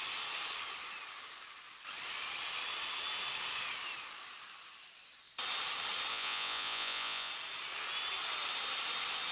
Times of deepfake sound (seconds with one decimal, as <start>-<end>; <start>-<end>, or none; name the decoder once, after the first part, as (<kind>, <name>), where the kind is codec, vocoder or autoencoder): 6.1-7.3 (vocoder, Vocos)